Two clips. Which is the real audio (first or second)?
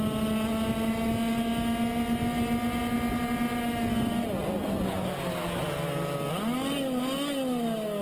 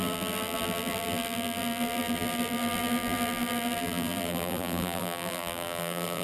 first